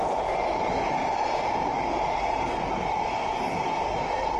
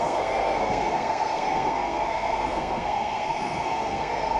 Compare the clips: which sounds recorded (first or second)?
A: first